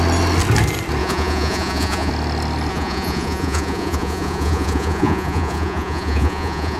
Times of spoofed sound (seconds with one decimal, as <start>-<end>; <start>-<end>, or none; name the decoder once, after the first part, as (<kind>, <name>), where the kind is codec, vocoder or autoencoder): 1.0-2.1 (vocoder, Vocos); 2.7-6.8